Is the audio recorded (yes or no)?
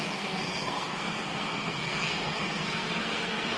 no